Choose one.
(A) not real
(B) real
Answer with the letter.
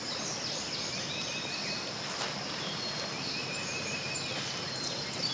B